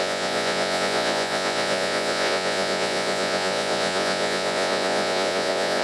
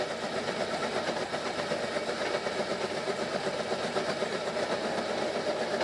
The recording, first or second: second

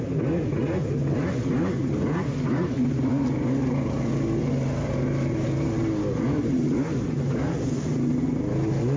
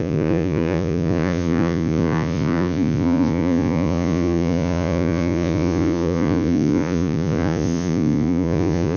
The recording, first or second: first